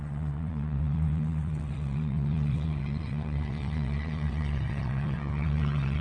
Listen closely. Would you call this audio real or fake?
fake